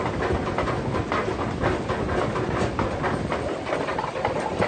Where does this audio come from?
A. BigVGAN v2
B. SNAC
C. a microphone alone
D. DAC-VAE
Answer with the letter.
C